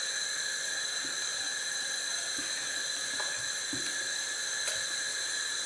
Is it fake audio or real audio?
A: real